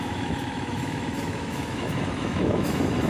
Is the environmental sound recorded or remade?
remade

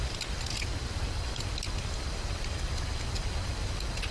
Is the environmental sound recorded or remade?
recorded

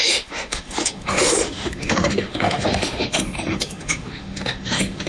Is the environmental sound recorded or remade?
remade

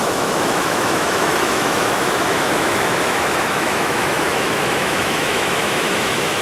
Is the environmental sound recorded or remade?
remade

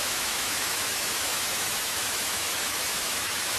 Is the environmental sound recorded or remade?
remade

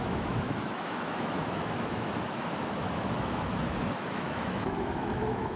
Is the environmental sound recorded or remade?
remade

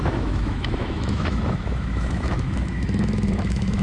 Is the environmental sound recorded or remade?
remade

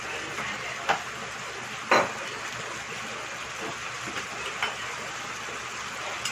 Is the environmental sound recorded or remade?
recorded